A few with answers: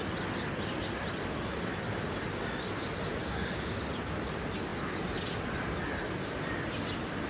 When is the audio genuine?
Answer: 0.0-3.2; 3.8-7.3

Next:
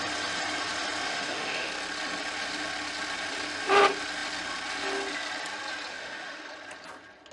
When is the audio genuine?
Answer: 0.0-1.1; 1.7-5.9; 6.4-7.3